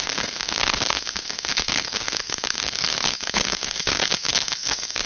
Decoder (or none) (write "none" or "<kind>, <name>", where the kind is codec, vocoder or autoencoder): codec, SNAC